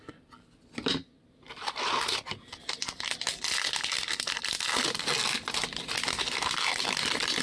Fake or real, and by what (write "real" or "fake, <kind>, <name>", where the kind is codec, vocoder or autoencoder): real